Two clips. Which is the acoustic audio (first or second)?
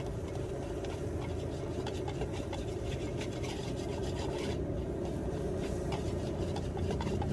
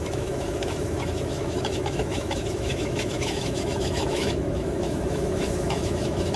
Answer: first